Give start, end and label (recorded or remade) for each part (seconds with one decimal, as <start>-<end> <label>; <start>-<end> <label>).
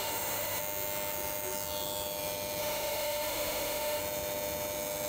0.0-0.6 remade; 0.6-2.6 recorded; 2.6-4.0 remade; 4.0-5.1 recorded